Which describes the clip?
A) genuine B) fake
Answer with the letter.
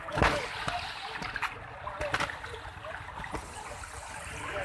A